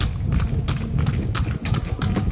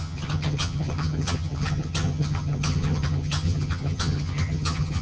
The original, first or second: first